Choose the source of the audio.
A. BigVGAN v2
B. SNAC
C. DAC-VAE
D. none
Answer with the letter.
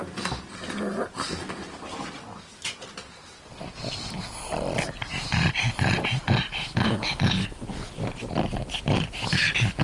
D